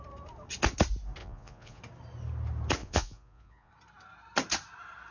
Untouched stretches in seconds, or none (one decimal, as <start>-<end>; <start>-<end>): 0.0-1.2; 1.8-2.8; 3.7-5.1